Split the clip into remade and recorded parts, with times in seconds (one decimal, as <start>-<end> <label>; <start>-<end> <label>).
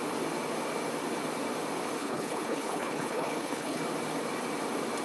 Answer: 0.0-2.0 recorded; 2.0-3.8 remade; 3.8-5.0 recorded